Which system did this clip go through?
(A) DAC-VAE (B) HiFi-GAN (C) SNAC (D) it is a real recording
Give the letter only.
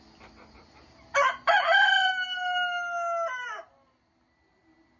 D